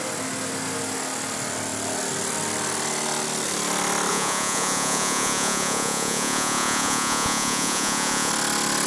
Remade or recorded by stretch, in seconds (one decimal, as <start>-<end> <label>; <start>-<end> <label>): 0.0-4.1 recorded; 4.1-8.3 remade; 8.3-8.9 recorded